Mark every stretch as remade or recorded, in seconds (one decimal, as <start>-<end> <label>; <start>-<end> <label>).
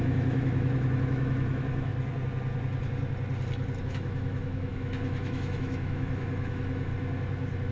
0.0-1.9 remade; 1.9-3.8 recorded; 3.8-6.9 remade; 6.9-7.7 recorded